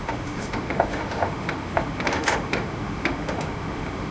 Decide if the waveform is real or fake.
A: fake